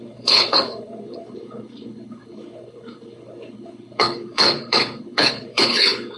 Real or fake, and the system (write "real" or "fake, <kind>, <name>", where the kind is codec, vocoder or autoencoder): fake, codec, HILCodec